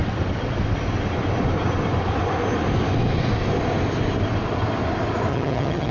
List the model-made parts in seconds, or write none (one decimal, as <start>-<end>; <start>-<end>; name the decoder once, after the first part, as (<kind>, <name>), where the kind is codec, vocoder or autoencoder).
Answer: 5.3-5.9 (vocoder, HiFi-GAN)